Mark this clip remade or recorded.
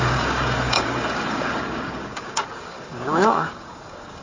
remade